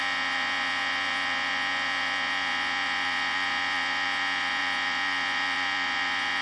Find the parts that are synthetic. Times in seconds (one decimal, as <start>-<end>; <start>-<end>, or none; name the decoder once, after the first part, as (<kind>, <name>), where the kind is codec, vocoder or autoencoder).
0.0-6.4 (vocoder, Vocos)